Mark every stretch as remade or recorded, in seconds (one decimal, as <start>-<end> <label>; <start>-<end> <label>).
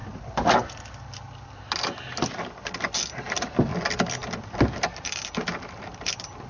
0.0-6.5 recorded